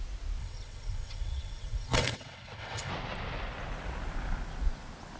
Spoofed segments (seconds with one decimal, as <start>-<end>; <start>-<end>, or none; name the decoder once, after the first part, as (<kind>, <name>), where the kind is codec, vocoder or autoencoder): 0.4-2.9 (vocoder, WaveNeXt)